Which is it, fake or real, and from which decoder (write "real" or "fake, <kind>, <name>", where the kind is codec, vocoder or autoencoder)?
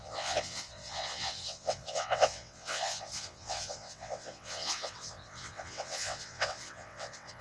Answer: fake, vocoder, WaveNeXt